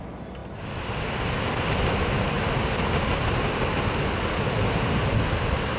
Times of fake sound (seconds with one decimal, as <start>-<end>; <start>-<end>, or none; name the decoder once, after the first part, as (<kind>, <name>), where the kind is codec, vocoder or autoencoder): none